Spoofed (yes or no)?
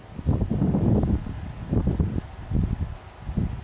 no